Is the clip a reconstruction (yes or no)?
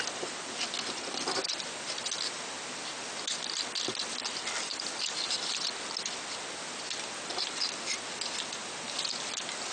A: no